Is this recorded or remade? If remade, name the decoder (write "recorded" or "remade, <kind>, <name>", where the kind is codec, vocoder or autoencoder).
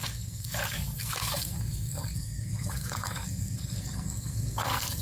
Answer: remade, codec, SNAC